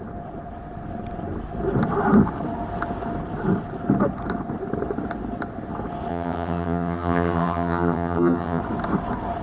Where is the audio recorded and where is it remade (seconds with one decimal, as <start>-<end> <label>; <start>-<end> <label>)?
0.0-6.1 recorded; 6.1-8.6 remade; 8.6-9.4 recorded